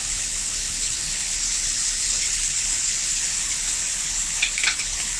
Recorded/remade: remade